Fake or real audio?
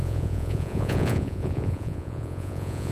fake